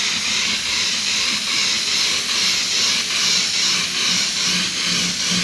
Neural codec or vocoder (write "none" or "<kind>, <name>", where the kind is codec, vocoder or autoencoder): none